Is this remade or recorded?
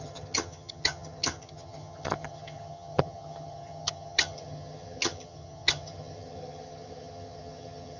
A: remade